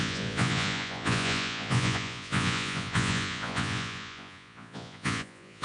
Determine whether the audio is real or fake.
fake